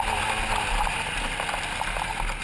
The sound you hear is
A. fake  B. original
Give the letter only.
B